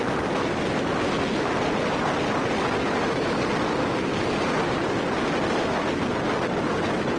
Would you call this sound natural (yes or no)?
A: yes